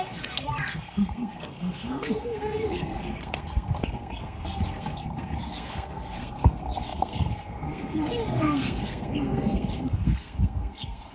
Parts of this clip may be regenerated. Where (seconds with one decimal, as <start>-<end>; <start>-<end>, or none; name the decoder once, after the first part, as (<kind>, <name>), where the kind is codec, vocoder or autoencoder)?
0.0-11.1 (codec, SNAC)